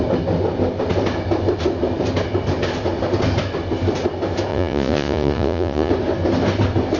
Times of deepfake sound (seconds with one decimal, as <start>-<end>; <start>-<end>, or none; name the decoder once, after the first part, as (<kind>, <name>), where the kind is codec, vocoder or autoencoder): 4.5-5.9 (vocoder, Vocos)